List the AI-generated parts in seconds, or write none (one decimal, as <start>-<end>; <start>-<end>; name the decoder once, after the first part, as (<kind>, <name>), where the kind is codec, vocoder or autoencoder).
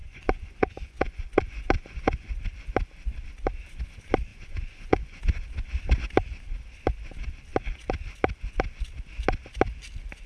0.0-2.3 (vocoder, Vocos); 4.3-5.2